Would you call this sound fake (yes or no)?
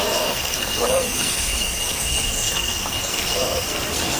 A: yes